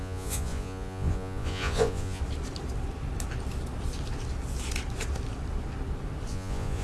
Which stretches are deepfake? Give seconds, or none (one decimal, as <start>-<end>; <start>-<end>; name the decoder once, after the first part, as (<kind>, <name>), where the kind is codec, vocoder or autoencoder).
0.0-2.2 (vocoder, Vocos); 6.3-6.8